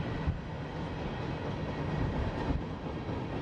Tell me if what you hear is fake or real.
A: real